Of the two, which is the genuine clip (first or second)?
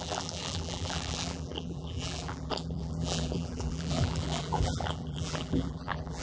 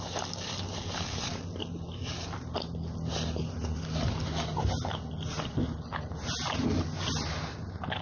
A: second